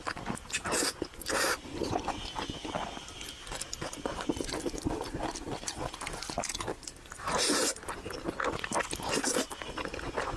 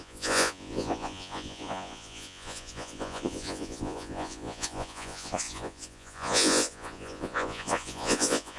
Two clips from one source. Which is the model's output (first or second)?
second